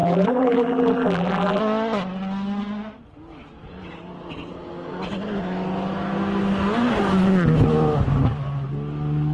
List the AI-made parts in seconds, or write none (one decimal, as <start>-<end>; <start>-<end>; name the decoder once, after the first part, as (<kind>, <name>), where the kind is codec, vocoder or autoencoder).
0.0-1.6 (vocoder, BigVGAN v2)